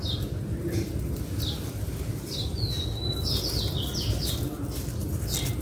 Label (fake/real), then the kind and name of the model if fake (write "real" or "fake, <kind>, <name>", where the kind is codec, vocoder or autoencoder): real